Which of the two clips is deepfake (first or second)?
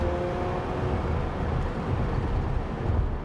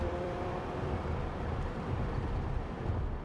second